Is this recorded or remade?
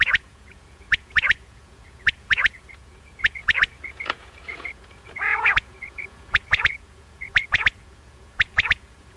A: remade